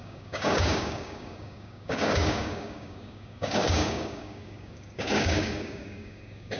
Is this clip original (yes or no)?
no